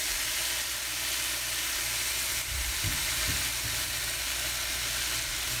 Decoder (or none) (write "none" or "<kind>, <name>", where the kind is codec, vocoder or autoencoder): none